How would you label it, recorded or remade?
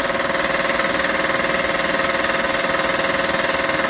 recorded